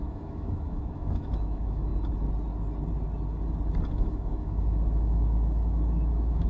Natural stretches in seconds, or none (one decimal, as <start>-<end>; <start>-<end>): 1.9-3.9